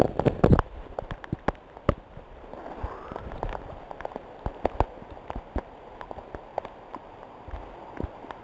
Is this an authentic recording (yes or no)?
yes